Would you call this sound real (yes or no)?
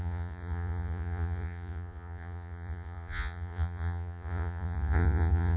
no